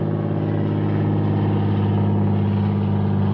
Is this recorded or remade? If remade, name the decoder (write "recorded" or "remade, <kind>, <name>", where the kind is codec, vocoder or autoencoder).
recorded